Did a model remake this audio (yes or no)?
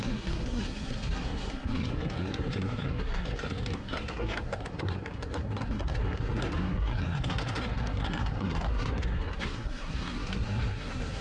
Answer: yes